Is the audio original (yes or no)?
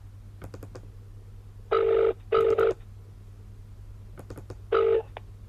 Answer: yes